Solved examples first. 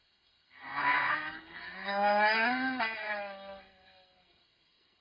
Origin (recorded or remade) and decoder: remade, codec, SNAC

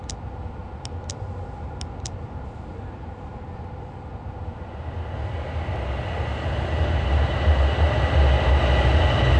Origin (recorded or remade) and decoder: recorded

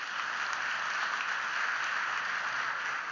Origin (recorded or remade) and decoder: recorded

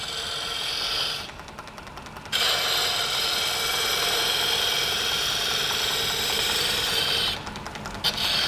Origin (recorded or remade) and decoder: recorded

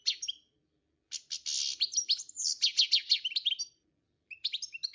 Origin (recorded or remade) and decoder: recorded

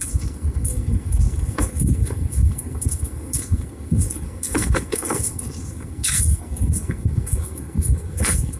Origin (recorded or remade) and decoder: remade, codec, SNAC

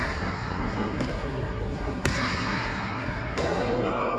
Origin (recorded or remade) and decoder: remade, codec, SNAC